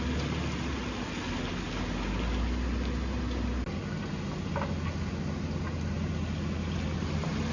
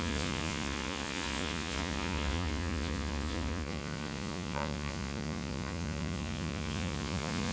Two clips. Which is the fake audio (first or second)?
second